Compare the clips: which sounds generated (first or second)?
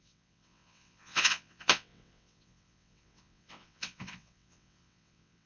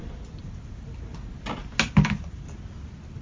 first